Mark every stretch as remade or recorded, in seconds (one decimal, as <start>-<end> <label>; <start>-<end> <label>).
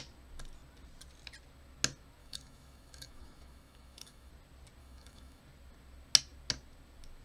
0.0-2.2 recorded; 2.2-4.3 remade; 4.3-4.8 recorded; 4.8-5.4 remade; 5.4-7.2 recorded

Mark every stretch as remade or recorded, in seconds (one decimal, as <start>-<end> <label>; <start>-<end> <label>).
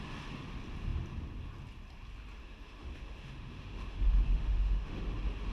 0.0-2.4 recorded; 2.4-5.0 remade; 5.0-5.5 recorded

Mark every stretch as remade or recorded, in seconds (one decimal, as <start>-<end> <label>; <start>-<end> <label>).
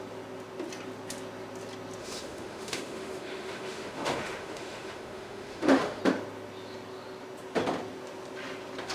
0.0-2.0 recorded; 2.0-6.0 remade; 6.0-8.9 recorded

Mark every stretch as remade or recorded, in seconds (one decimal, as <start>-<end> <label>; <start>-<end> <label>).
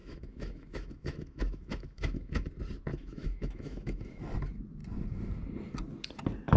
0.0-2.5 remade; 2.5-2.9 recorded; 2.9-4.2 remade; 4.2-6.6 recorded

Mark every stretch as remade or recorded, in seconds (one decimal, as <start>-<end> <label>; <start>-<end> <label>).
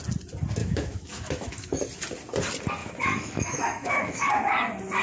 0.0-0.6 recorded; 0.6-1.8 remade; 1.8-2.8 recorded; 2.8-4.3 remade; 4.3-5.0 recorded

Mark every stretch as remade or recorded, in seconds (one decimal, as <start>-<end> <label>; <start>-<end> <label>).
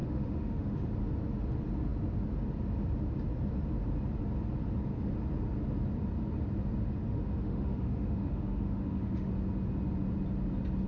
0.0-0.9 remade; 0.9-7.0 recorded; 7.0-9.3 remade; 9.3-10.9 recorded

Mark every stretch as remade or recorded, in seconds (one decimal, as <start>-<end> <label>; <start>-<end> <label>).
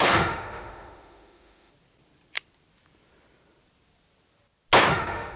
0.0-1.7 remade; 1.7-4.9 recorded; 4.9-5.4 remade